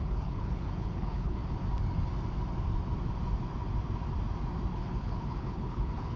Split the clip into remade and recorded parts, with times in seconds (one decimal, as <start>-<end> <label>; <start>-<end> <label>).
0.0-1.4 remade; 1.4-4.7 recorded; 4.7-6.2 remade